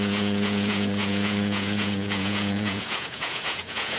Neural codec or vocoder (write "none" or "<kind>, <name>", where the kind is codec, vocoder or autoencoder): vocoder, Vocos